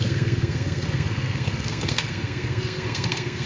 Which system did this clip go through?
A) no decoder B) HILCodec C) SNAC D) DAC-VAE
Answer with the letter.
C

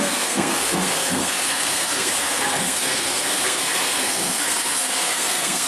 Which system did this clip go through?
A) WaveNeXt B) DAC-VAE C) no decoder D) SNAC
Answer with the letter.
D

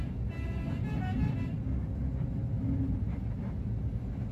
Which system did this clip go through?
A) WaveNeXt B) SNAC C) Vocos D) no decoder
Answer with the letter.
D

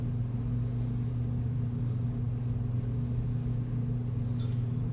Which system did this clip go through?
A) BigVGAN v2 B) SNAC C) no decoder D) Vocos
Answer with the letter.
C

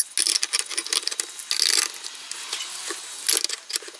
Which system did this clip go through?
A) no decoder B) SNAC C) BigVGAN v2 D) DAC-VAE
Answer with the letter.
A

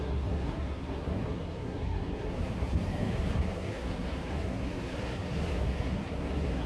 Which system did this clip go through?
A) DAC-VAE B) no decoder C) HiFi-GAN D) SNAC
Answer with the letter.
D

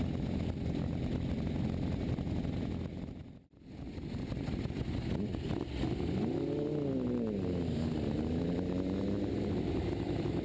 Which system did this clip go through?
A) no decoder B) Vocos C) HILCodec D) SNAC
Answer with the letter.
A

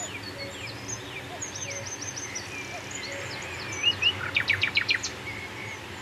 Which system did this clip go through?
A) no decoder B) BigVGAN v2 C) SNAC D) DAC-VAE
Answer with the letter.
A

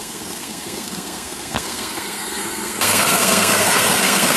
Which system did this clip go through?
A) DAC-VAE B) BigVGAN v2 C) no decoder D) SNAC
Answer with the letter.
D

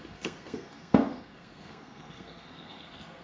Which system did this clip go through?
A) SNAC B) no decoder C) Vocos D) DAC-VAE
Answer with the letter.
A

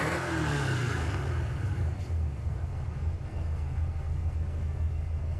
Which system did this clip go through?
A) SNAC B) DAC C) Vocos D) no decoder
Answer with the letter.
A